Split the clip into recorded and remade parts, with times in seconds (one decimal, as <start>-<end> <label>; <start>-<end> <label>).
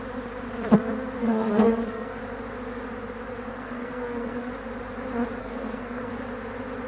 0.0-1.2 recorded; 1.2-2.2 remade; 2.2-3.5 recorded; 3.5-4.5 remade; 4.5-5.4 recorded; 5.4-6.1 remade; 6.1-6.9 recorded